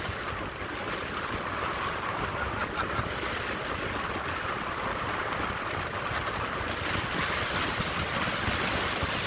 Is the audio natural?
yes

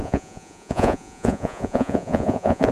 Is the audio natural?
no